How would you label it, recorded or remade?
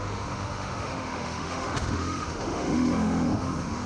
remade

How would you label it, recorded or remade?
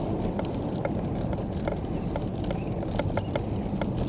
recorded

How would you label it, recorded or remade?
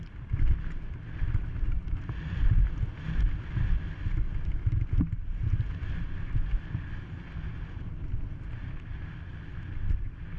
recorded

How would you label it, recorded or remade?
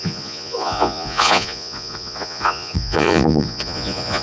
remade